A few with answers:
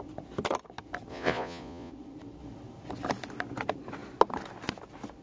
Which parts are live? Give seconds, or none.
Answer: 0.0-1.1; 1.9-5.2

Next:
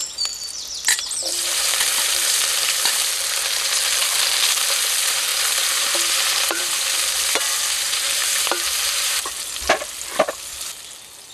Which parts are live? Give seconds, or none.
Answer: 0.0-1.2; 3.1-5.3; 7.4-8.2; 9.3-11.3

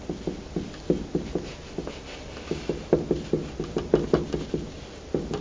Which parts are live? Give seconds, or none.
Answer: 0.0-5.4